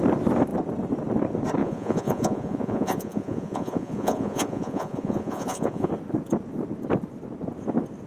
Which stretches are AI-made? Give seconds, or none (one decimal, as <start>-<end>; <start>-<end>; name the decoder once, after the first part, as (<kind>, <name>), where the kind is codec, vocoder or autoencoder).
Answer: 1.6-5.9 (vocoder, Vocos)